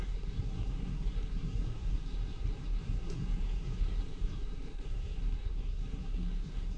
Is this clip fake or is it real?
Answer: fake